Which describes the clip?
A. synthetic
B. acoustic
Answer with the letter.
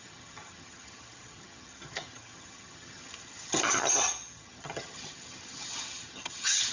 A